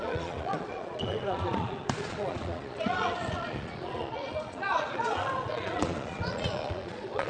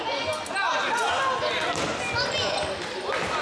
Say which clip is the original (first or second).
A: second